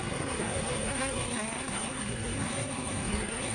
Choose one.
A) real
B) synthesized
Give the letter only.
B